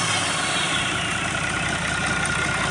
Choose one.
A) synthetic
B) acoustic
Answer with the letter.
B